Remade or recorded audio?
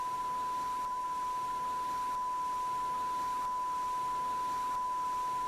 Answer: recorded